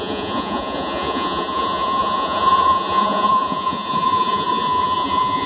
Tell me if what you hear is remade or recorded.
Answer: remade